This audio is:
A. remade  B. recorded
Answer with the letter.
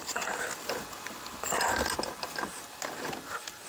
B